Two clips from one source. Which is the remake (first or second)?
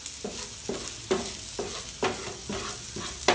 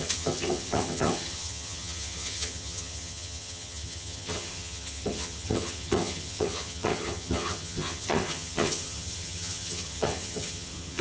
second